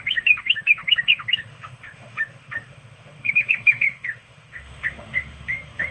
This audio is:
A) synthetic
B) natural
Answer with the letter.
A